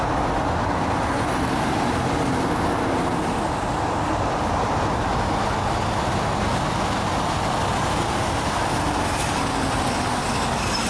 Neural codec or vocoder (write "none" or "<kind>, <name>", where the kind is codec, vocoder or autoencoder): none